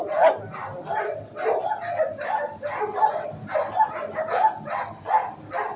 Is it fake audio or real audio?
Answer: real